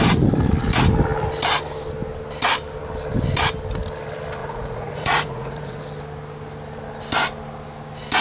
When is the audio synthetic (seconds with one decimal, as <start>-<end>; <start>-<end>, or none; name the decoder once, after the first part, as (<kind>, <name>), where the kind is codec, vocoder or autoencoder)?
4.4-5.8 (vocoder, Vocos)

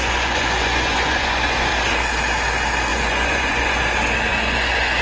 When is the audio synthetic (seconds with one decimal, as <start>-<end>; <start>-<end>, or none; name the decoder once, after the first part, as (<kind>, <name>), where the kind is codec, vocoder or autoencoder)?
0.0-1.7 (vocoder, Vocos); 2.9-3.8; 4.3-5.0